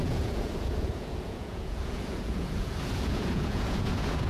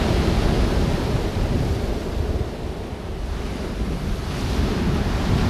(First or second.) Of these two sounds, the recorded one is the second